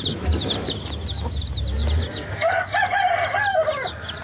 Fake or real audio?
real